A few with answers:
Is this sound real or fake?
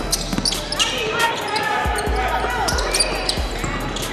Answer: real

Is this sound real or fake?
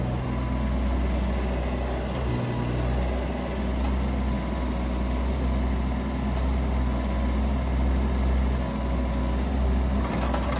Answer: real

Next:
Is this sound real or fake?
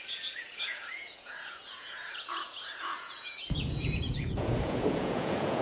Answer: fake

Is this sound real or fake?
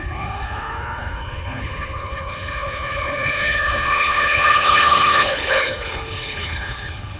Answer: fake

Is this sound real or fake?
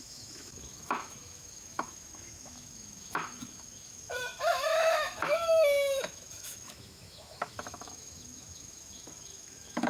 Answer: fake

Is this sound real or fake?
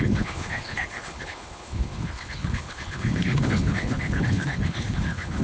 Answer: fake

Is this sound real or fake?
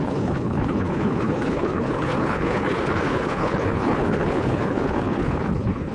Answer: fake